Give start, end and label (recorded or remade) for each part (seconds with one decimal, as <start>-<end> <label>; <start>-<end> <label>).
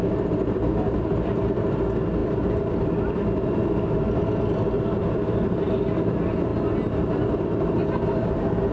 0.0-6.5 remade; 6.5-7.2 recorded; 7.2-8.7 remade